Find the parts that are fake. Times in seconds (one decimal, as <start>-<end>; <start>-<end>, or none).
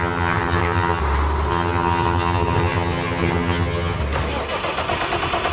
0.0-1.0; 1.5-4.0